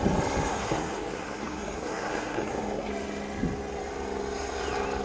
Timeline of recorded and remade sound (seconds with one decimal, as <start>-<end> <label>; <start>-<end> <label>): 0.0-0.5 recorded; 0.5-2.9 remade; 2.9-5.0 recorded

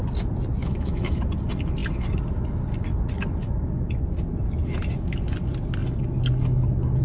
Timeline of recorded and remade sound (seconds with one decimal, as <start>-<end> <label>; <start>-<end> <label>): 0.0-0.6 recorded; 0.6-1.2 remade; 1.2-7.0 recorded

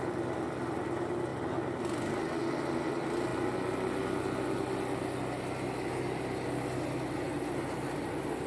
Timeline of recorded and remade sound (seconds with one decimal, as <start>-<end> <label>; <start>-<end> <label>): 0.0-8.5 recorded

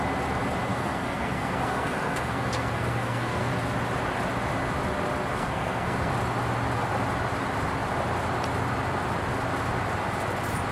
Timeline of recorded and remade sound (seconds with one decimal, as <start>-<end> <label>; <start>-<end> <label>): 0.0-0.7 recorded; 0.7-3.5 remade; 3.5-5.3 recorded; 5.3-6.1 remade; 6.1-10.7 recorded